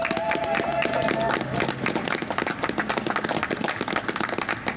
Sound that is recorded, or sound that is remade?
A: recorded